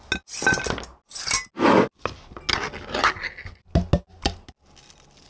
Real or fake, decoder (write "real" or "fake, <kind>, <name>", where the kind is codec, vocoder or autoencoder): real